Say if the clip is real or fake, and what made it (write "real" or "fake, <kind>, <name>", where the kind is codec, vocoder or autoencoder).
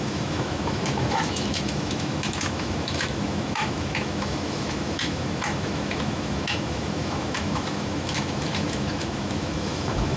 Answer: fake, autoencoder, DAC-VAE